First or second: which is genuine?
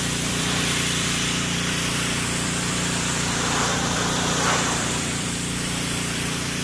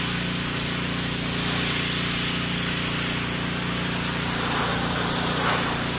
second